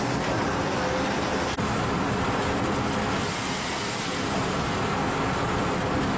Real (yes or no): yes